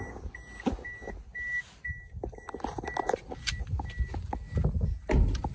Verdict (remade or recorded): recorded